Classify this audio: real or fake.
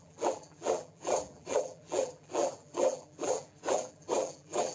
fake